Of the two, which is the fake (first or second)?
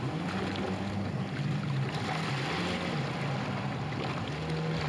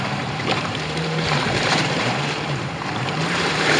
second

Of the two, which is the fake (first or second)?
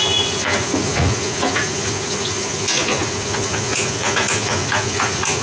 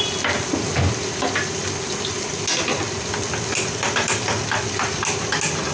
first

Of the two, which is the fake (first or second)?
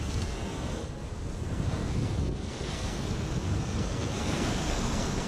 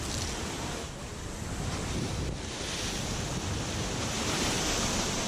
first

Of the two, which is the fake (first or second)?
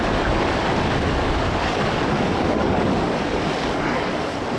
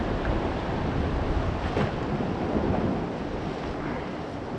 first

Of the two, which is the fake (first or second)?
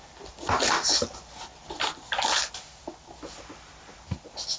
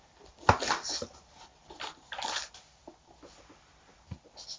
second